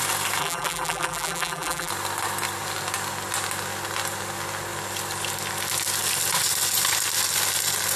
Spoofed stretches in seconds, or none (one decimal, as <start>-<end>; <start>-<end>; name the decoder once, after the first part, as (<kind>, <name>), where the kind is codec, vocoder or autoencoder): 0.4-1.9 (vocoder, BigVGAN v2)